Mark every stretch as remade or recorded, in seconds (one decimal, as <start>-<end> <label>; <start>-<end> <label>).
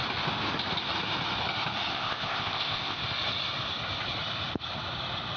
0.0-1.9 recorded; 1.9-3.0 remade; 3.0-5.4 recorded